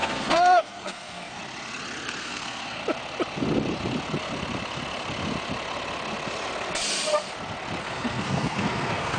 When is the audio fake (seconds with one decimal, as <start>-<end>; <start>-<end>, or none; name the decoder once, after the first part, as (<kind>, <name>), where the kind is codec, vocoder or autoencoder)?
0.0-1.4 (codec, SNAC); 2.2-2.8; 7.8-9.2